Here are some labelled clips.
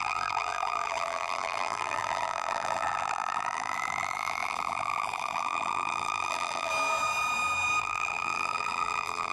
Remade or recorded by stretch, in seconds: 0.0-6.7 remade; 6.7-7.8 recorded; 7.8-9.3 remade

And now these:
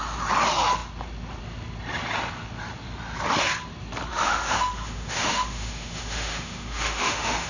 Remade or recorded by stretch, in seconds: 0.0-4.1 recorded; 4.1-7.5 remade

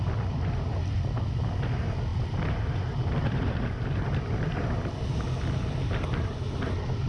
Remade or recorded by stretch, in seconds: 0.0-7.1 recorded

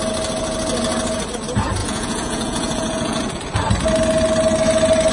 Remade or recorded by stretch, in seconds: 0.0-1.8 recorded; 1.8-3.4 remade; 3.4-5.1 recorded

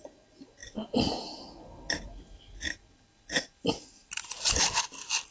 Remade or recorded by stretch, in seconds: 0.0-5.3 recorded

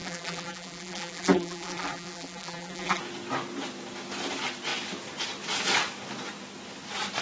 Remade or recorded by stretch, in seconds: 0.0-3.0 remade; 3.0-7.2 recorded